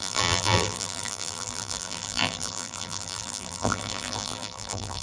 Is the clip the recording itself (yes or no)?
no